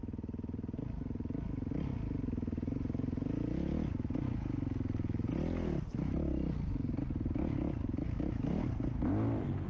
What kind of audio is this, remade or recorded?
recorded